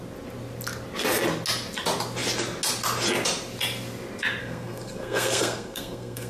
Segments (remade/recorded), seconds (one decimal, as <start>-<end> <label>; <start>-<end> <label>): 0.0-4.4 recorded; 4.4-6.3 remade